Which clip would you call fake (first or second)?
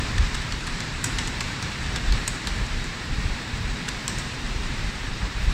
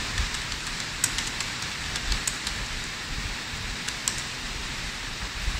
first